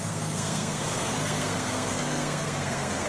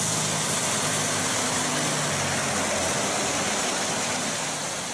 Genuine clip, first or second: second